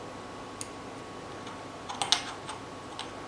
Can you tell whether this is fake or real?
real